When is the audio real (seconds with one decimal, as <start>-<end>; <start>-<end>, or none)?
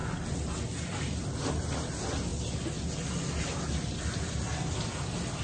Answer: 0.0-5.4